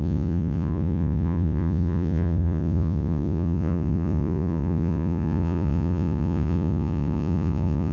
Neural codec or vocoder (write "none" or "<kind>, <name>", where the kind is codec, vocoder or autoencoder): vocoder, Vocos